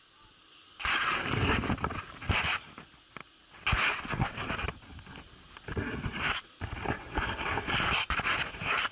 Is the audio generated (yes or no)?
no